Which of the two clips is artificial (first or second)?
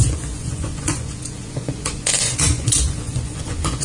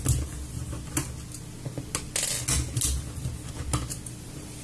first